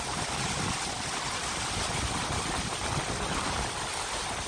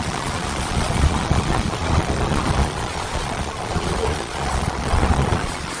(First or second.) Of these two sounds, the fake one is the second